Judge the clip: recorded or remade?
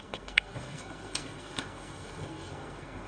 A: remade